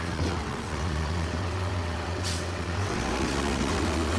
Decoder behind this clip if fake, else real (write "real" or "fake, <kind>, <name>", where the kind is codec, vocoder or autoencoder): fake, vocoder, WaveNeXt